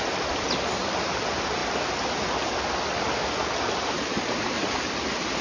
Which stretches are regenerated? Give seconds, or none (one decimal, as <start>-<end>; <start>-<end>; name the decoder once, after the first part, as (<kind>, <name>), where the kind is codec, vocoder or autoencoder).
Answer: none